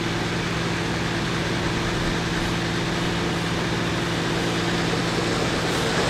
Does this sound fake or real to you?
real